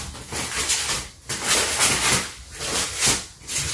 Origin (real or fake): real